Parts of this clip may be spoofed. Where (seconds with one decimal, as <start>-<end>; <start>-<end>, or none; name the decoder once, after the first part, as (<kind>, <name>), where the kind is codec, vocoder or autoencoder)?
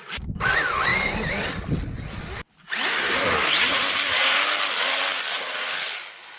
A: none